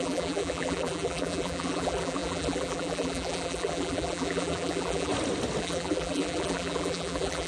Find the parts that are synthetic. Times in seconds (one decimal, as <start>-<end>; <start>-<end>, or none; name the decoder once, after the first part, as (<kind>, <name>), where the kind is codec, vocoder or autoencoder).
0.0-5.1 (vocoder, BigVGAN v2); 5.6-7.5